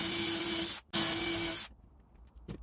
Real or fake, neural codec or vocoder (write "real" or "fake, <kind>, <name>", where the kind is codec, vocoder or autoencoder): real